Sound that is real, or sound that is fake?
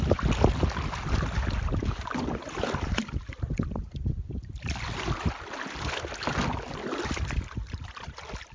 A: real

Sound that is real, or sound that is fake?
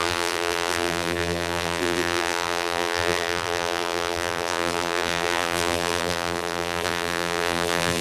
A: fake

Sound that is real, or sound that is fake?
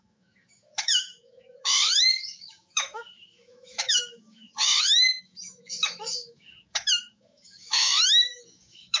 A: fake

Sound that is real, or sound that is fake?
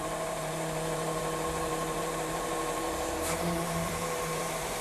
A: fake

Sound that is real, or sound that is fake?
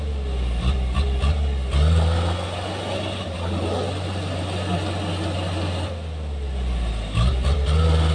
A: real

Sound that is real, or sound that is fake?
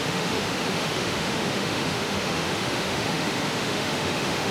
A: fake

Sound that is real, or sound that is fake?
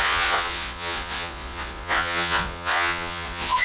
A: fake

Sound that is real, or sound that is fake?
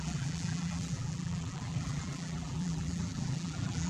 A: fake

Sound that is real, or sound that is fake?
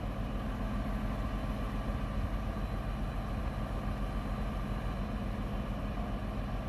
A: real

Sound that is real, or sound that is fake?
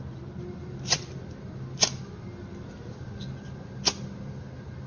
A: real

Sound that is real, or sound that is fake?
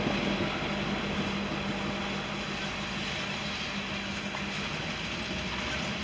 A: real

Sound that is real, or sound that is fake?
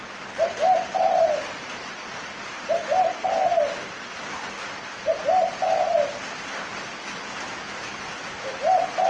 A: real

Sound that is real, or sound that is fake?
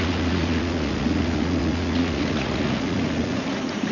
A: fake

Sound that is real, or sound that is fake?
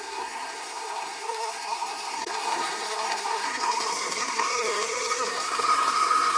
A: fake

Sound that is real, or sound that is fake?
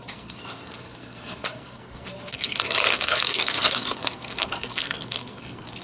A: fake